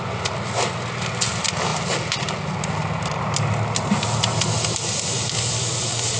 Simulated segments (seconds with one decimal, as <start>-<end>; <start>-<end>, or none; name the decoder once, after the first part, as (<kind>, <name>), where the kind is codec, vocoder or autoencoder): none